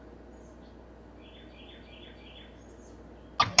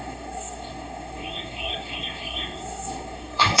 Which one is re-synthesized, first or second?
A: second